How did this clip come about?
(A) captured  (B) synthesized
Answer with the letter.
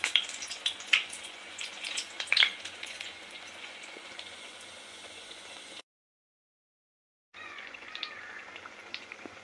B